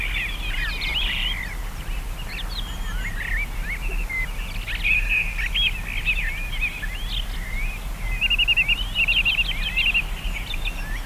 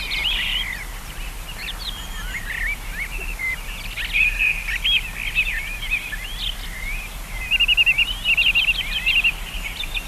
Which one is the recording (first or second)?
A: first